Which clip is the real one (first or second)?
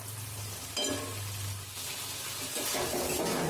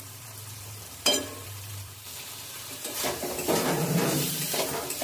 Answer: first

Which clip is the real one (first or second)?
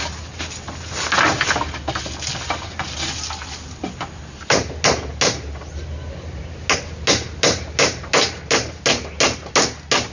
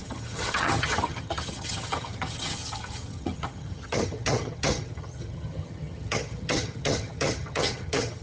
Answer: first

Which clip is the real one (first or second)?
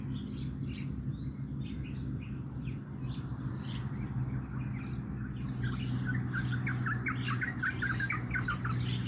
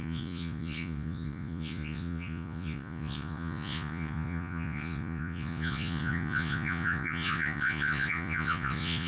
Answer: first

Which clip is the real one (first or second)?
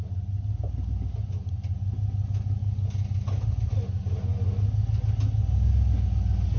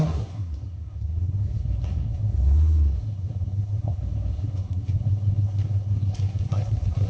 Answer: first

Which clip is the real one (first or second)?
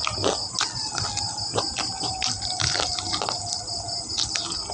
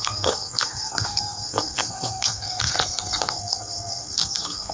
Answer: first